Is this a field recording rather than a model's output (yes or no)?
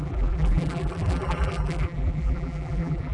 no